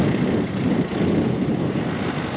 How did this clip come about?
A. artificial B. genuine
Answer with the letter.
B